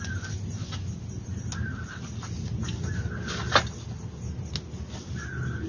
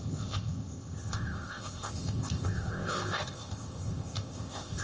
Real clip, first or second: first